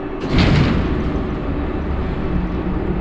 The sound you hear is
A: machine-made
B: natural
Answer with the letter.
B